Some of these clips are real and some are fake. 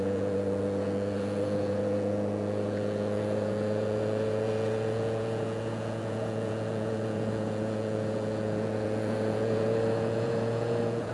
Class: fake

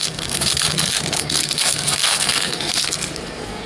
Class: fake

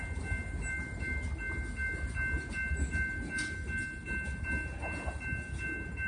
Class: real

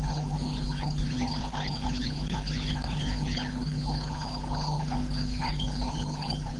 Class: fake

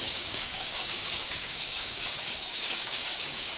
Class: fake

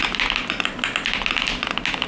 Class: real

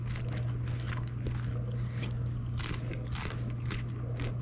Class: real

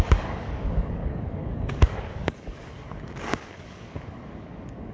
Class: fake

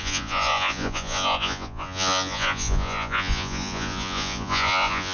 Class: fake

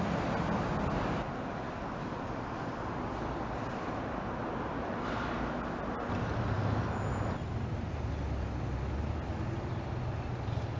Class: real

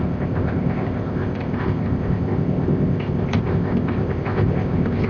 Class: fake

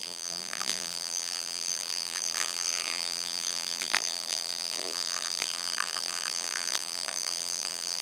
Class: fake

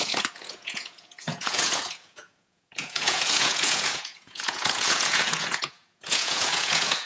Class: fake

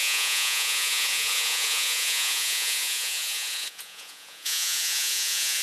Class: fake